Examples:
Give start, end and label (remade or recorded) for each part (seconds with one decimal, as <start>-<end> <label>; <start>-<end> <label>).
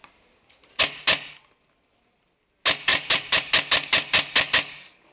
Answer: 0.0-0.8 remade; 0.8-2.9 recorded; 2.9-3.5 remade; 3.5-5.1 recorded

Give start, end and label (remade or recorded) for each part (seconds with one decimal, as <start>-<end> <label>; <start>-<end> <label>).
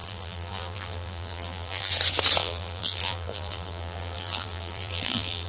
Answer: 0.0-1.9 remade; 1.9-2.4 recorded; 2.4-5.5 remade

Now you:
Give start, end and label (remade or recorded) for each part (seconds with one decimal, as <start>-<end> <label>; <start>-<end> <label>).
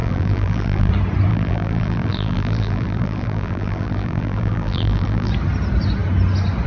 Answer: 0.0-0.9 remade; 0.9-1.3 recorded; 1.3-5.3 remade; 5.3-6.7 recorded